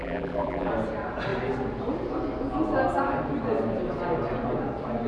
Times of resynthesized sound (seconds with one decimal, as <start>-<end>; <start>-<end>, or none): 0.0-0.7